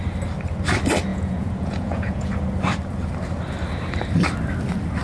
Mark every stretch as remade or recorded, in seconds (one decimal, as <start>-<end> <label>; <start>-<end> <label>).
0.0-1.1 recorded; 1.1-2.4 remade; 2.4-5.0 recorded